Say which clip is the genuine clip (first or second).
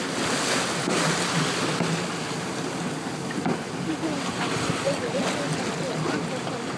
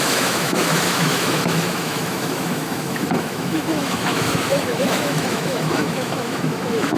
first